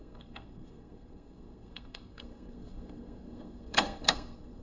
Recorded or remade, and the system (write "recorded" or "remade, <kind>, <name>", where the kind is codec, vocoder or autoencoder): remade, codec, SNAC